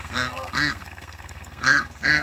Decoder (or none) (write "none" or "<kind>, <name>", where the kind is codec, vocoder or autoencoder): codec, SNAC